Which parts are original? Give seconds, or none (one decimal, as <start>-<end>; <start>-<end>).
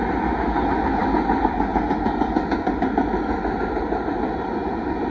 0.0-5.1